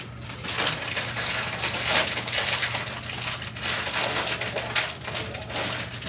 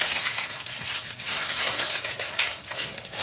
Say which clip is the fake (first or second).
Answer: second